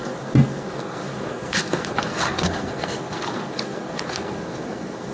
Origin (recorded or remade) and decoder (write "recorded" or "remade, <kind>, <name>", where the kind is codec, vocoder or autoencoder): remade, codec, SNAC